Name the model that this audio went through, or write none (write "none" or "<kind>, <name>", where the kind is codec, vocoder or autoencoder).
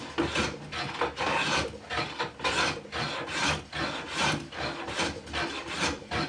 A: none